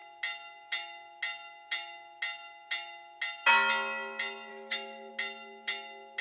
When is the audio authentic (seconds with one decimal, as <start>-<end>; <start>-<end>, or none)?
0.0-4.5; 5.1-6.2